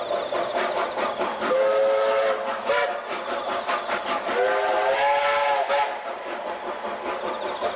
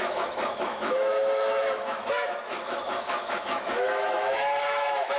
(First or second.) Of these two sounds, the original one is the first